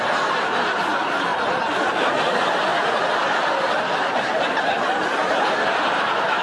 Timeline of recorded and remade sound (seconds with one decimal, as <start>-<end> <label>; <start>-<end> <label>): 0.0-1.3 recorded; 1.3-2.1 remade; 2.1-5.2 recorded; 5.2-6.4 remade